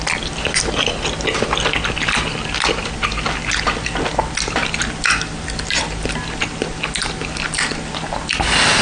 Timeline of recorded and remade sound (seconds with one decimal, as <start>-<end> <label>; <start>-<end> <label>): 0.0-8.8 recorded